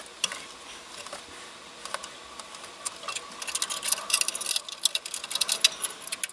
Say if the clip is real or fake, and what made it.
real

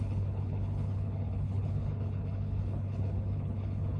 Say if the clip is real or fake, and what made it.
fake, codec, HILCodec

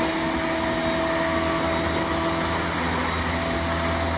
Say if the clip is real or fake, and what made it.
real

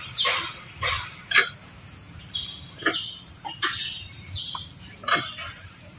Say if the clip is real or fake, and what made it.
fake, vocoder, BigVGAN v2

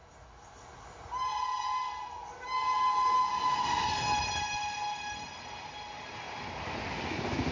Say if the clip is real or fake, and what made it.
real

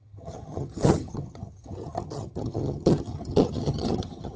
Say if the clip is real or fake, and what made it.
fake, vocoder, HiFi-GAN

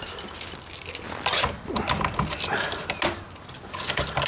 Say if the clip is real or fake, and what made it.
real